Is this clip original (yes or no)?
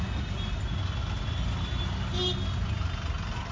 yes